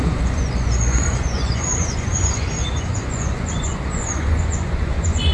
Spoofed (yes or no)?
yes